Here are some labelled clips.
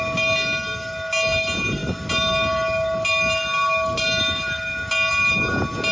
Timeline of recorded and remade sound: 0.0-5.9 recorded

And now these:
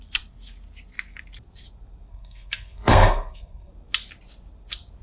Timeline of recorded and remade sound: 0.0-2.1 recorded; 2.1-3.7 remade; 3.7-5.0 recorded

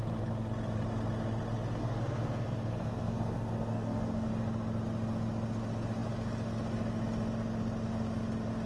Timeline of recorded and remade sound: 0.0-1.8 recorded; 1.8-4.3 remade; 4.3-8.7 recorded